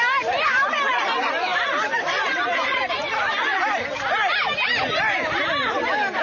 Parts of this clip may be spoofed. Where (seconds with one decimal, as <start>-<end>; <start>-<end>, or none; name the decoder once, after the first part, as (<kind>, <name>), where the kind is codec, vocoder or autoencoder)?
0.0-6.2 (vocoder, BigVGAN v2)